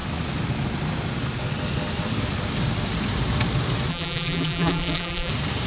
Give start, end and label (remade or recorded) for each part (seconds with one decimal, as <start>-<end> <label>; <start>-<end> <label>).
0.0-3.9 recorded; 3.9-5.3 remade; 5.3-5.7 recorded